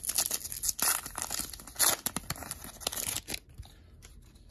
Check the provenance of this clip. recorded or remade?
recorded